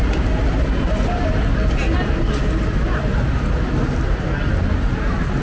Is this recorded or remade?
recorded